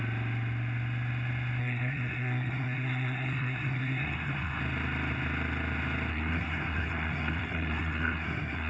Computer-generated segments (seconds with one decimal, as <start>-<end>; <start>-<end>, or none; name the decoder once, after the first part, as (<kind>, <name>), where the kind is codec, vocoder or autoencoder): 1.6-4.6 (codec, SNAC); 6.1-8.7